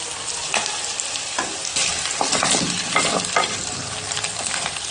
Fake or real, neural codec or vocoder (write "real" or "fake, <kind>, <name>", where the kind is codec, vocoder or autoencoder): real